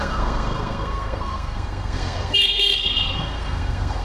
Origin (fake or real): fake